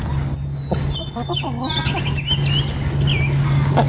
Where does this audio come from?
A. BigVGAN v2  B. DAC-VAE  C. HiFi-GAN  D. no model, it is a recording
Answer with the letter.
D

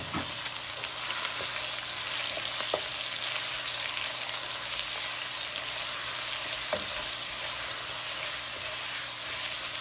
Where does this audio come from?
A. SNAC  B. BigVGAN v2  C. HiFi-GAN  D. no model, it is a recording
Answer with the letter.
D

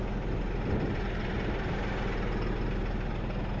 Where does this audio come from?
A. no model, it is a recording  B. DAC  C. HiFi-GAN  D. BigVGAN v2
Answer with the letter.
A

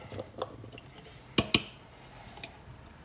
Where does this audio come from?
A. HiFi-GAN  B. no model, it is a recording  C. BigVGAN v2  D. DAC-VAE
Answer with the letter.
B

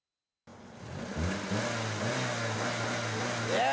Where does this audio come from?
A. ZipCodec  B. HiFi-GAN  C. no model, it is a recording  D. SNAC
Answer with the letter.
C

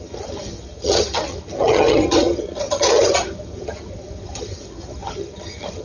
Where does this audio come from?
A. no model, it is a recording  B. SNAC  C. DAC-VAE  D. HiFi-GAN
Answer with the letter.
D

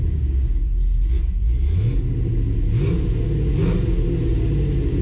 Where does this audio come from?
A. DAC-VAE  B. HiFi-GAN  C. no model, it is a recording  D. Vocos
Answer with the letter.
C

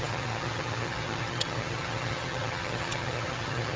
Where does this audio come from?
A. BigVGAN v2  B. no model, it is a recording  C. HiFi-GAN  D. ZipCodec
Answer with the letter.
C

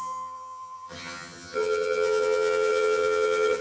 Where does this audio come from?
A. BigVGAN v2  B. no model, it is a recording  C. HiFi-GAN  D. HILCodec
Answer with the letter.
C